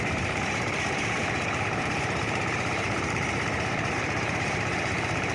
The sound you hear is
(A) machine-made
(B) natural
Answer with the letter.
A